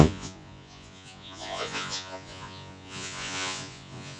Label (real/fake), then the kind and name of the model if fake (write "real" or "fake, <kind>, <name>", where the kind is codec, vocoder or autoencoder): fake, vocoder, Vocos